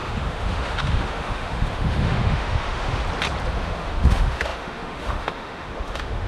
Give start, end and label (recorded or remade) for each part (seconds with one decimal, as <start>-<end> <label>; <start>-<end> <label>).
0.0-3.0 remade; 3.0-3.5 recorded; 3.5-6.3 remade